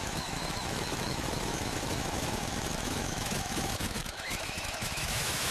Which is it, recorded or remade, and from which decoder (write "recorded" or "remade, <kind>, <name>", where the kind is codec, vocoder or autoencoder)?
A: remade, autoencoder, DAC-VAE